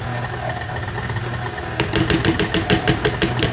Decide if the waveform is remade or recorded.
recorded